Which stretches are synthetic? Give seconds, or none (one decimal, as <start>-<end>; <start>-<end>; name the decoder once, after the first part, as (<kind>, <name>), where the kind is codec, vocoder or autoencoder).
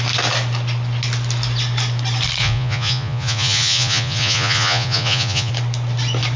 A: 2.4-5.5 (vocoder, Vocos)